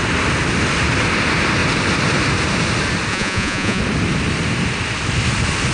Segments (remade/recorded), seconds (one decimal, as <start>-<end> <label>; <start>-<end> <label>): 0.0-3.1 recorded; 3.1-3.8 remade; 3.8-5.7 recorded